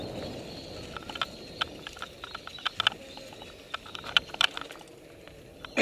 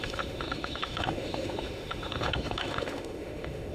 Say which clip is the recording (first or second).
first